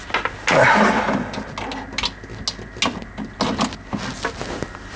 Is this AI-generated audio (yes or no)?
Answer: no